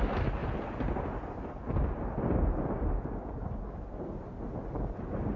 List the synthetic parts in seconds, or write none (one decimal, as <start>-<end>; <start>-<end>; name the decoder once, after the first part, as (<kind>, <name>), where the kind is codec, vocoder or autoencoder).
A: none